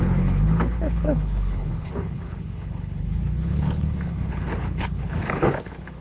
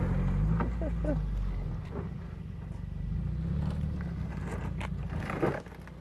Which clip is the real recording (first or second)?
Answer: second